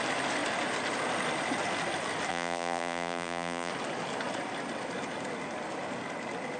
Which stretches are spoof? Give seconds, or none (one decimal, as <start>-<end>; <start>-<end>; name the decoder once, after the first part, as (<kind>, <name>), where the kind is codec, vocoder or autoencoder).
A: 2.3-3.7 (vocoder, BigVGAN v2)